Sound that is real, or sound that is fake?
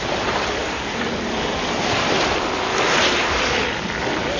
real